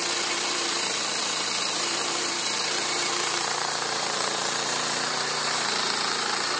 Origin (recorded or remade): remade